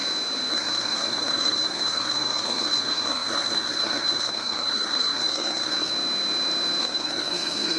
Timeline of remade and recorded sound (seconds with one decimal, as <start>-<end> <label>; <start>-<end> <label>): 0.0-0.5 recorded; 0.5-5.9 remade; 5.9-6.8 recorded; 6.8-7.8 remade